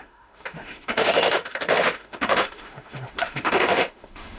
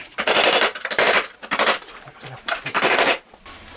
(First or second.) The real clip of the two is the second